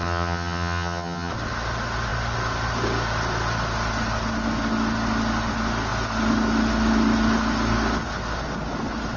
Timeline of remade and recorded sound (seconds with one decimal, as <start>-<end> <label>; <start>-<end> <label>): 0.0-1.3 remade; 1.3-9.2 recorded